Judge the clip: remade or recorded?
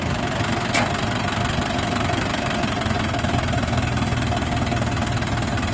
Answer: recorded